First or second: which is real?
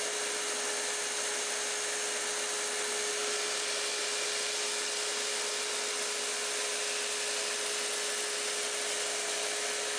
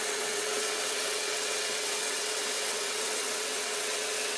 first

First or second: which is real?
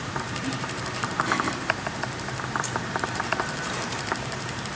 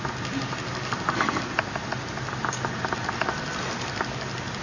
second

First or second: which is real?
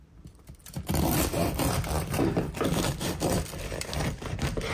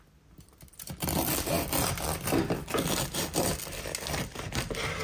second